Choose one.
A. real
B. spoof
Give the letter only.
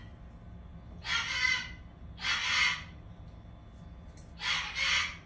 A